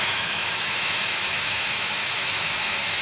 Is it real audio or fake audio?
fake